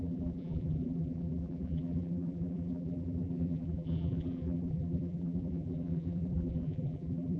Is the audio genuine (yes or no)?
no